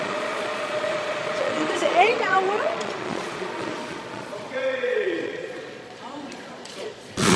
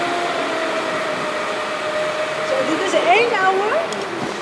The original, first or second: second